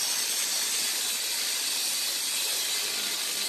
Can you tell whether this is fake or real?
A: real